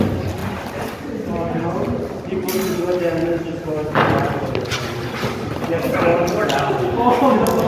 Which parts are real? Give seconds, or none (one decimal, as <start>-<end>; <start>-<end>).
0.0-0.4; 2.2-3.2; 4.5-6.1; 6.8-7.7